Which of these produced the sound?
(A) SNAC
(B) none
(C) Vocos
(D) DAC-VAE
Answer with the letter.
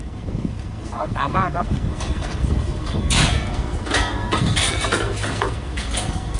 A